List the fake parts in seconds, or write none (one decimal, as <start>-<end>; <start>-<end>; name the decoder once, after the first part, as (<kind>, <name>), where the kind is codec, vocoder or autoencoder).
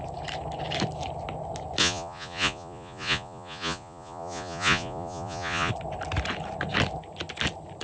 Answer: 1.8-5.7 (vocoder, Vocos)